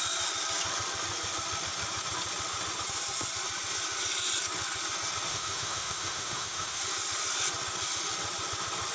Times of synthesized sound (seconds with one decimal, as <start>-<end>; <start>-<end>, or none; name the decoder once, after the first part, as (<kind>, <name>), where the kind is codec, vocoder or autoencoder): 5.3-6.8 (autoencoder, DAC-VAE)